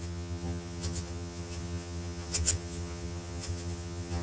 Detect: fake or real fake